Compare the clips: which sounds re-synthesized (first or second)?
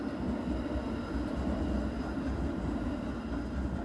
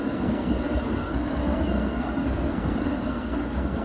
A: second